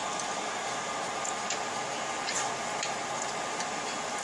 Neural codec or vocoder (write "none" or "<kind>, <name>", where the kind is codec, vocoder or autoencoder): none